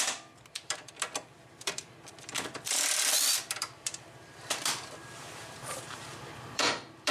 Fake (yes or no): yes